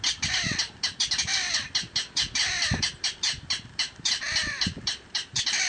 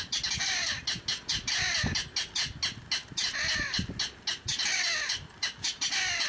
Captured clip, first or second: second